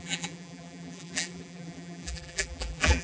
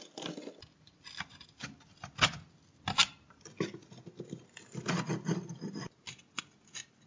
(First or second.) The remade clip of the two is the first